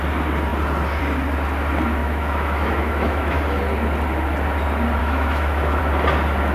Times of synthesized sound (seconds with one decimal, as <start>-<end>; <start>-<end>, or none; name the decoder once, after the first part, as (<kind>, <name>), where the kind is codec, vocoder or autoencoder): 2.0-3.4 (autoencoder, DAC-VAE); 5.0-5.8